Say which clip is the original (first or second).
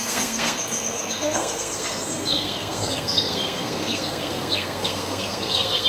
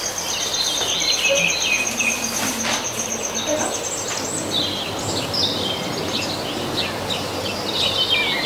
second